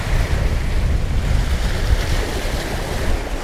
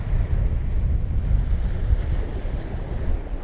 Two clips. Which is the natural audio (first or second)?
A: second